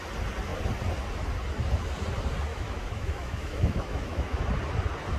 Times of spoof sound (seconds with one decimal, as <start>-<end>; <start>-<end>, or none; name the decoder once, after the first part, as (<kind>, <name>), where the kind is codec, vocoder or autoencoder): 2.5-4.4 (autoencoder, DAC-VAE)